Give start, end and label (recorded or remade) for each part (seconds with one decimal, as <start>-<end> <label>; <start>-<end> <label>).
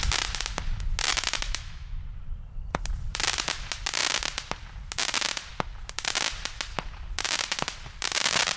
0.0-1.1 recorded; 1.1-2.0 remade; 2.0-8.6 recorded